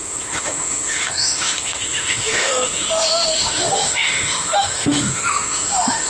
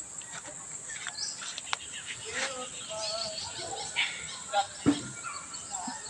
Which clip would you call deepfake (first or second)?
first